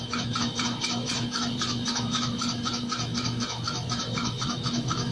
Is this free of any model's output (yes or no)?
no